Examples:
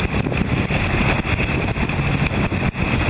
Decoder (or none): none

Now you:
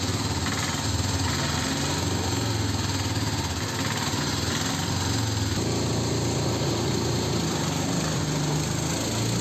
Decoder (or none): none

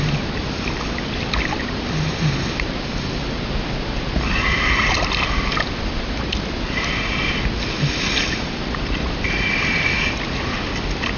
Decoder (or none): none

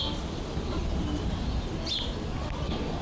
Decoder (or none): none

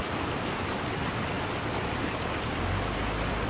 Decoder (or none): none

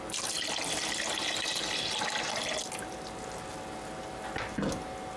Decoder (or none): none